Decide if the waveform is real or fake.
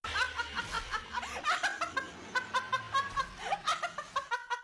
real